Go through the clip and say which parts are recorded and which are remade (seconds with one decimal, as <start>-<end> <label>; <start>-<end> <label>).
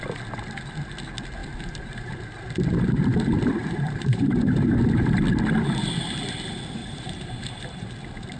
0.0-1.4 recorded; 1.4-2.1 remade; 2.1-3.6 recorded; 3.6-4.4 remade; 4.4-6.8 recorded; 6.8-7.9 remade; 7.9-8.4 recorded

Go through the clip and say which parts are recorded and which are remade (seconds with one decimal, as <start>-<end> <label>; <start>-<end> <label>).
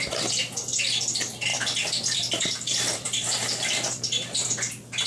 0.0-1.5 recorded; 1.5-4.5 remade; 4.5-5.1 recorded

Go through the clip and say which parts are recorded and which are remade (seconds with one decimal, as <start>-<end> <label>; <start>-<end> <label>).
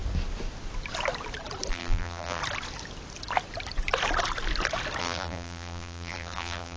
0.0-1.7 recorded; 1.7-2.4 remade; 2.4-5.0 recorded; 5.0-6.8 remade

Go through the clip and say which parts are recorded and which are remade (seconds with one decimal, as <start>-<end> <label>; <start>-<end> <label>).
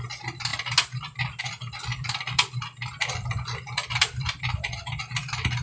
0.0-1.9 recorded; 1.9-4.8 remade; 4.8-5.6 recorded